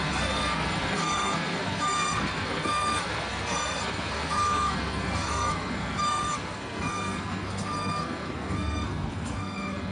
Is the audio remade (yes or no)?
yes